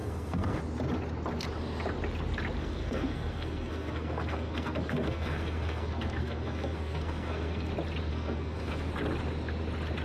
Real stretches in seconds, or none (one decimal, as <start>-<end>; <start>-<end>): 0.6-2.6; 7.7-8.1; 8.9-10.0